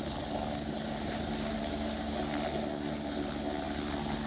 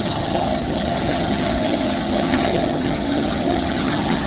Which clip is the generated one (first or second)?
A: second